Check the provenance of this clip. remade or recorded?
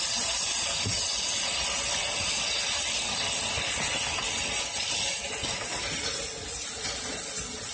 recorded